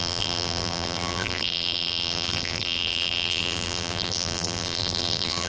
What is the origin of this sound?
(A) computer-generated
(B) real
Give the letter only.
A